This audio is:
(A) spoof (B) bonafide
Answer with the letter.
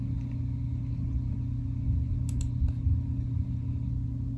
B